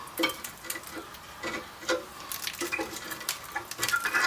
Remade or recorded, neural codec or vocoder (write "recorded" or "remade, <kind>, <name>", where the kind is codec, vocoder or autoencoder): recorded